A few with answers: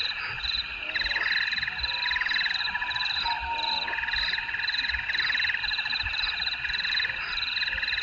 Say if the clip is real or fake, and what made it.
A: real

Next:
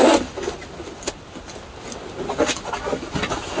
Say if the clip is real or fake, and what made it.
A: real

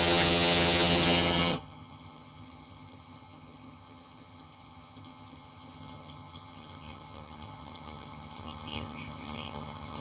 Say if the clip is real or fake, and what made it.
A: fake, vocoder, HiFi-GAN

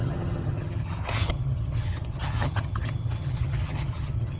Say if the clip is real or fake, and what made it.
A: fake, vocoder, HiFi-GAN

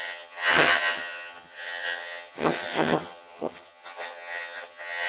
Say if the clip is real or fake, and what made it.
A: fake, vocoder, HiFi-GAN